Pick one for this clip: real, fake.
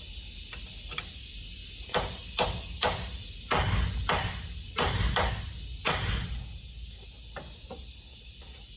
real